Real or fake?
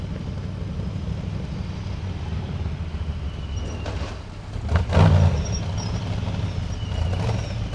real